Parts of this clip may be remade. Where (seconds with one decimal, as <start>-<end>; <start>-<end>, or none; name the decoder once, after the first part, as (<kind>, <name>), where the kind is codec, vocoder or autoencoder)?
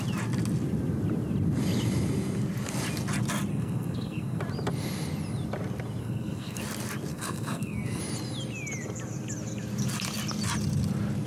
3.5-4.4 (codec, SNAC); 6.0-6.6; 7.1-8.0